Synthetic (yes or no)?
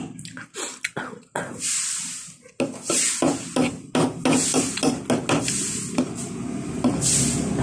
no